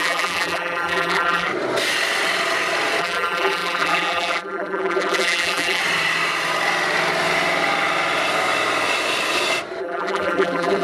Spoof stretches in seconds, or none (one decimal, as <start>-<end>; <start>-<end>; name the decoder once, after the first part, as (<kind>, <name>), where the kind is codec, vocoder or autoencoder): 0.0-1.5 (vocoder, BigVGAN v2); 3.0-5.8; 9.8-10.8